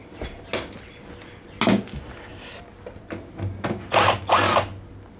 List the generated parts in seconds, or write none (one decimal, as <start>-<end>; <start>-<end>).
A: none